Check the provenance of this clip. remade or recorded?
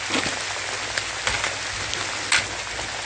recorded